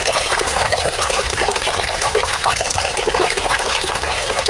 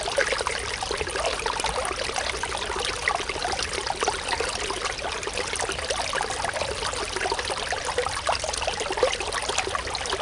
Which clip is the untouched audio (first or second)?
second